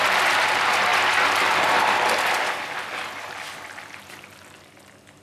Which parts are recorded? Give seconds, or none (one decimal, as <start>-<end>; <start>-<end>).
0.0-5.2